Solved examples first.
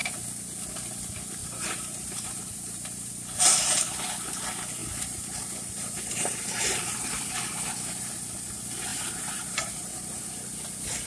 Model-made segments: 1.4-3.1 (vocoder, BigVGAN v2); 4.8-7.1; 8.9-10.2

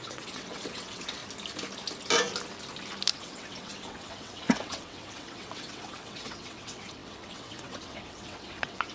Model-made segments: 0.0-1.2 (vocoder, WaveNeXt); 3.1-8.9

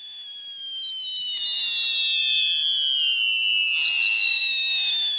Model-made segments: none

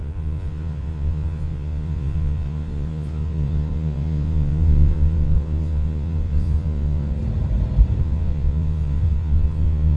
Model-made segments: 0.0-7.2 (vocoder, Vocos); 8.0-10.0

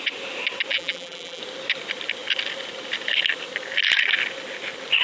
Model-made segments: 0.7-1.4 (vocoder, BigVGAN v2)

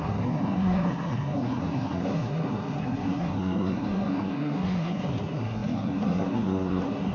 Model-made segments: 0.0-7.1 (codec, SNAC)

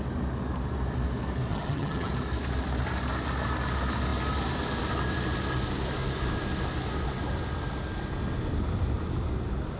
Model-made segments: 1.5-2.1 (vocoder, HiFi-GAN)

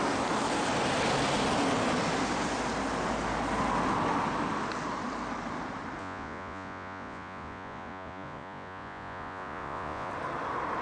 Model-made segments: 6.0-10.1 (vocoder, Vocos)